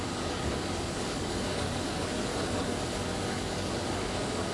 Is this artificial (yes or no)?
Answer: yes